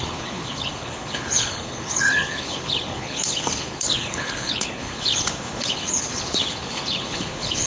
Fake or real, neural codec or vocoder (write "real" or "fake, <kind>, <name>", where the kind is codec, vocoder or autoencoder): fake, codec, HILCodec